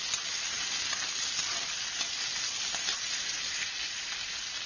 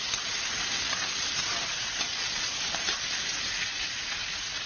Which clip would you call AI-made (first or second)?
second